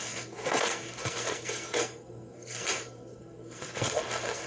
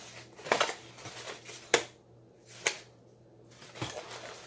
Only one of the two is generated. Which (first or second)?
first